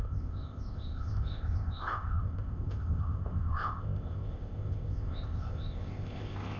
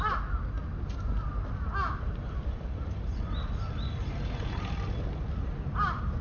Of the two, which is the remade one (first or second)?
first